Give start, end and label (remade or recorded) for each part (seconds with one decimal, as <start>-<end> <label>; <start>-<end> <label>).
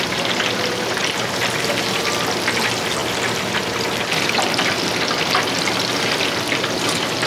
0.0-1.0 recorded; 1.0-2.0 remade; 2.0-7.3 recorded